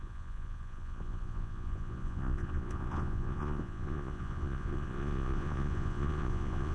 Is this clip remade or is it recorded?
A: remade